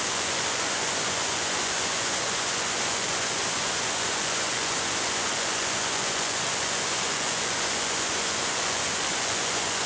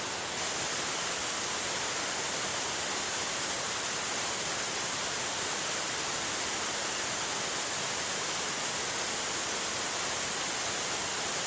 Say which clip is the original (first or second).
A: second